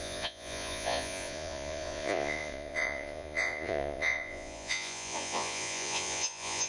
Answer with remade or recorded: remade